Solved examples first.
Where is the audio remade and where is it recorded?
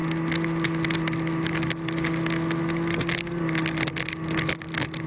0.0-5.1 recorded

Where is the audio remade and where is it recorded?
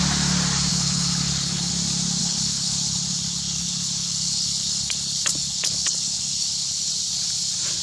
0.0-0.7 recorded; 0.7-1.7 remade; 1.7-2.2 recorded; 2.2-6.9 remade; 6.9-7.8 recorded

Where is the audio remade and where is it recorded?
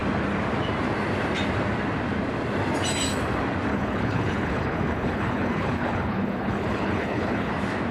0.0-3.7 recorded; 3.7-7.5 remade; 7.5-7.9 recorded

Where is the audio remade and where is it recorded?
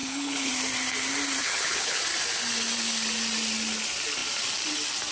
0.0-0.5 remade; 0.5-1.4 recorded; 1.4-2.0 remade; 2.0-5.1 recorded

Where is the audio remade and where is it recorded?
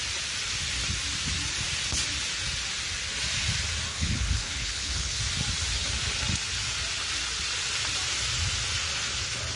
0.0-3.9 recorded; 3.9-5.2 remade; 5.2-9.6 recorded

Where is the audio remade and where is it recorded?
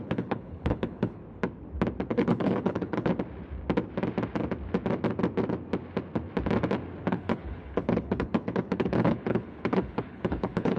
0.0-1.2 remade; 1.2-2.1 recorded; 2.1-3.1 remade; 3.1-7.1 recorded; 7.1-10.8 remade